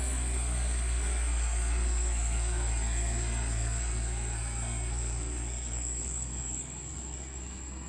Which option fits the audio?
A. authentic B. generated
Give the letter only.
B